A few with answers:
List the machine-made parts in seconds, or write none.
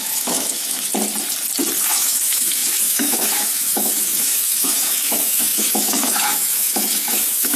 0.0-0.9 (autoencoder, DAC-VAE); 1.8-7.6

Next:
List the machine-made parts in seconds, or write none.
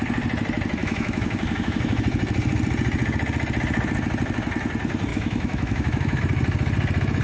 0.8-2.0 (autoencoder, DAC-VAE); 5.1-6.2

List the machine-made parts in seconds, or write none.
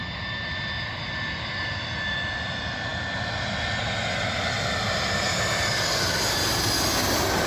none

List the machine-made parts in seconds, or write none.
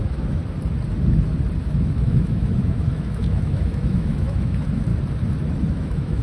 0.0-0.4 (autoencoder, DAC-VAE); 1.6-4.9; 5.7-6.2